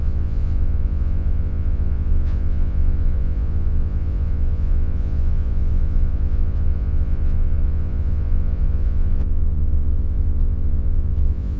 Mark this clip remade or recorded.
remade